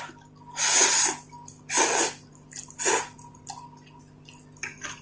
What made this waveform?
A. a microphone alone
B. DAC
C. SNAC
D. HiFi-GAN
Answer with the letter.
A